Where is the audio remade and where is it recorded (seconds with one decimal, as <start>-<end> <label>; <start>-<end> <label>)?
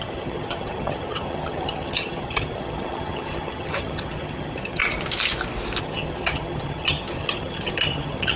0.0-4.8 remade; 4.8-5.8 recorded; 5.8-8.4 remade